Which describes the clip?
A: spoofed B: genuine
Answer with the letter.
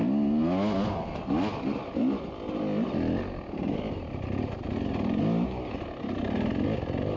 B